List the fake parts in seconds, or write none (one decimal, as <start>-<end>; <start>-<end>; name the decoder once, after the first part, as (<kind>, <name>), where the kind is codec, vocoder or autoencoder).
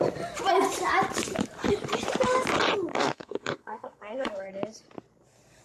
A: 2.9-4.5 (codec, SNAC)